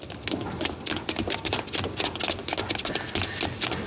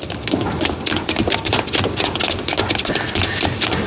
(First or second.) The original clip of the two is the first